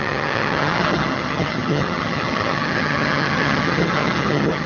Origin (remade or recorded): remade